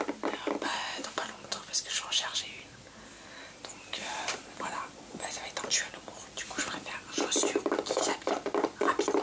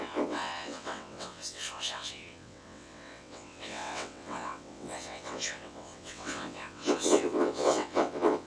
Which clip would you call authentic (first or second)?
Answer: first